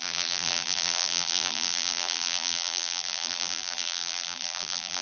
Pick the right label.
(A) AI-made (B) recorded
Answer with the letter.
A